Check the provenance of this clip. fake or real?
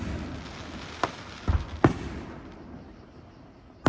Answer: real